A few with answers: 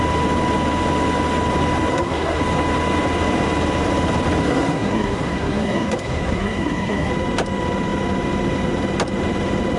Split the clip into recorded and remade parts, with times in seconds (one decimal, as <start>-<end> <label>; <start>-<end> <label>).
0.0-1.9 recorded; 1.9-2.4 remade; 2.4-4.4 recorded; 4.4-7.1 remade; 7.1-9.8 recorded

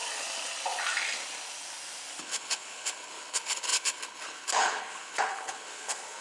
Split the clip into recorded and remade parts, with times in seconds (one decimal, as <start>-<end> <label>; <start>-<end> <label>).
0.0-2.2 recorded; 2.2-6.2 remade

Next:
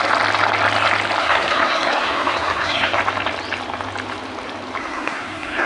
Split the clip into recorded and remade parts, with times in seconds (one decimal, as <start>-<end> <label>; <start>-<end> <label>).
0.0-1.2 recorded; 1.2-3.0 remade; 3.0-4.8 recorded; 4.8-5.7 remade

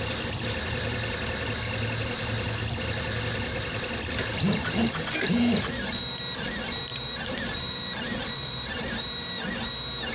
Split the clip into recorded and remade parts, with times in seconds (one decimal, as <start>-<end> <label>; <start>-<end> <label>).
0.0-6.9 recorded; 6.9-9.7 remade; 9.7-10.1 recorded

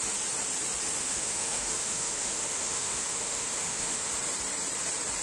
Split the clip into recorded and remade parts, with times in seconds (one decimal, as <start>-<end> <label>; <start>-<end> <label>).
0.0-1.0 recorded; 1.0-4.1 remade; 4.1-5.2 recorded

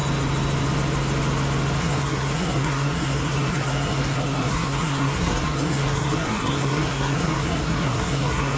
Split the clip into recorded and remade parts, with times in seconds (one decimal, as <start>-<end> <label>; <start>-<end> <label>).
0.0-1.8 recorded; 1.8-8.6 remade